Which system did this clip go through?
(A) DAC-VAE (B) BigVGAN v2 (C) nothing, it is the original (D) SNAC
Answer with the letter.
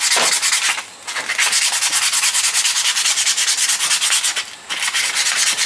C